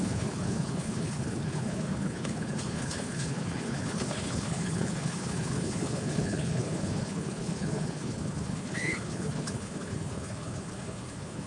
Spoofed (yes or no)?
yes